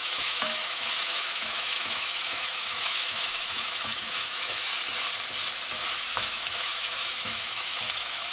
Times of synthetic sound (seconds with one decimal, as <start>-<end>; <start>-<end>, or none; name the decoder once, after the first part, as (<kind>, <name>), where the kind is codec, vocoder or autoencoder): 0.0-4.7 (autoencoder, DAC-VAE); 5.9-8.3